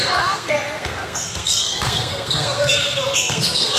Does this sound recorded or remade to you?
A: remade